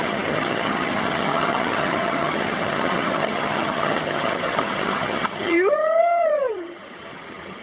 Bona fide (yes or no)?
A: no